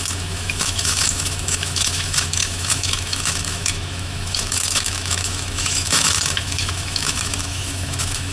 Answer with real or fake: fake